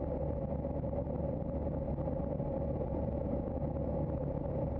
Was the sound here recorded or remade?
recorded